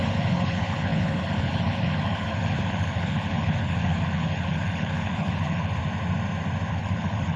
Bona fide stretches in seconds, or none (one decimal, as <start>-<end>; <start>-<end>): 5.8-6.7